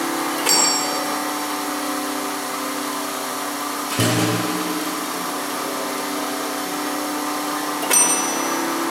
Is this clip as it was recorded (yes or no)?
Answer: yes